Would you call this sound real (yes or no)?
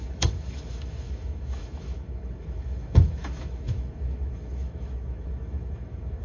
no